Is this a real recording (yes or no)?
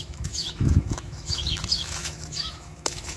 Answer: no